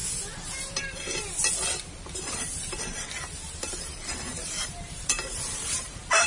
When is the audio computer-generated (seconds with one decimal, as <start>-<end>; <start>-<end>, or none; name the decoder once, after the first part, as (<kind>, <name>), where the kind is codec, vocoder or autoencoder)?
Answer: 2.8-6.3 (vocoder, BigVGAN v2)